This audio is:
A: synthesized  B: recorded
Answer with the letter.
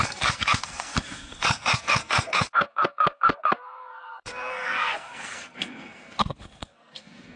A